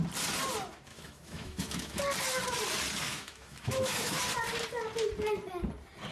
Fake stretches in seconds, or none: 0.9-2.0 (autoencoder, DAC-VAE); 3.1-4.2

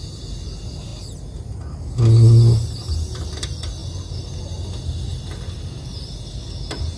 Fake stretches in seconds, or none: none

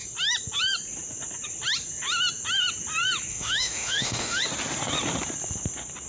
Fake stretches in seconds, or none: 3.3-4.4 (autoencoder, DAC-VAE)

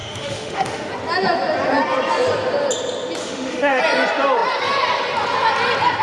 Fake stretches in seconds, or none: 0.0-0.9 (autoencoder, DAC-VAE); 3.2-3.8

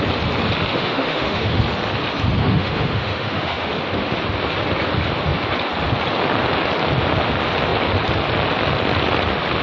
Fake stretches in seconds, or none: 0.7-1.6 (autoencoder, DAC-VAE); 2.4-3.7

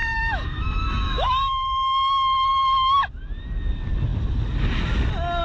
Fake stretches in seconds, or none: 0.0-3.2 (autoencoder, DAC-VAE)